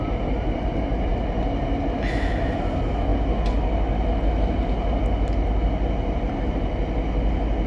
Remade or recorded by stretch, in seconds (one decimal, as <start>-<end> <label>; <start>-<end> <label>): 0.0-7.7 recorded